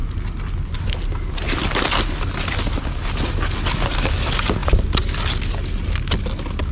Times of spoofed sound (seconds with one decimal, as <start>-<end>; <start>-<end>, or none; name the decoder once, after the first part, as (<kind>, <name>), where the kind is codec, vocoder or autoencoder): none